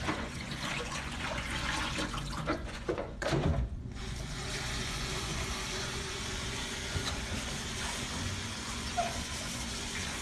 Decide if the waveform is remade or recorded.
remade